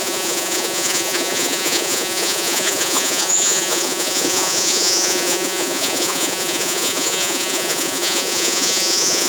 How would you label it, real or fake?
fake